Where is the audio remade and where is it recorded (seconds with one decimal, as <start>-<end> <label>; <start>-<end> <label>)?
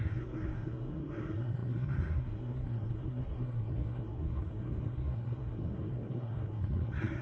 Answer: 0.0-7.2 remade